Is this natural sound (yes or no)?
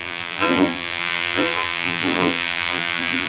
no